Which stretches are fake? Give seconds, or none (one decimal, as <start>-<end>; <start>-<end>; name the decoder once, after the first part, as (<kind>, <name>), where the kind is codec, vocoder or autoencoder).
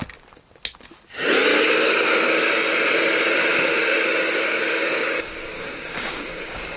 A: 1.5-2.5 (codec, DAC); 3.8-6.8